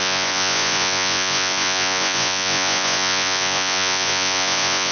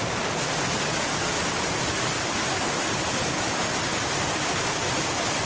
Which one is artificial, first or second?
first